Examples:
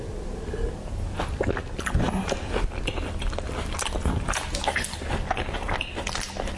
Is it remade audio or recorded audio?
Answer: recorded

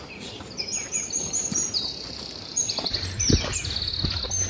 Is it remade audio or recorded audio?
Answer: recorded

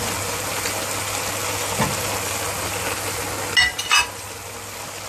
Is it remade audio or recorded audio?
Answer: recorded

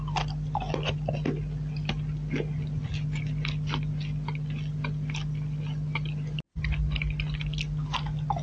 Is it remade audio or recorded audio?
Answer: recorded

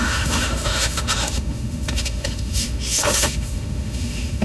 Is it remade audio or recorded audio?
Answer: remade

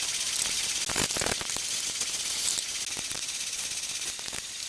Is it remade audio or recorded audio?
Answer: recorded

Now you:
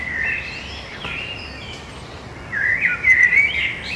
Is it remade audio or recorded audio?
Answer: recorded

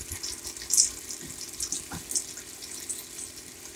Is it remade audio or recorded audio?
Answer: recorded